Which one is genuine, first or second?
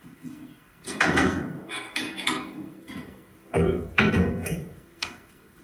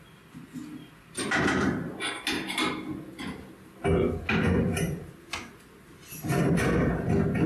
second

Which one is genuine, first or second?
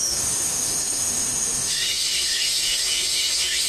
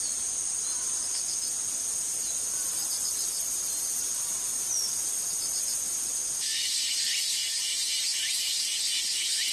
second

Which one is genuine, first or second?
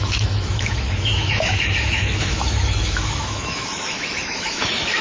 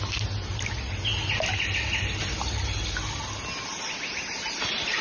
second